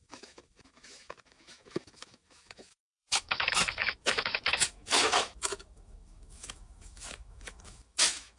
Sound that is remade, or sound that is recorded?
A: remade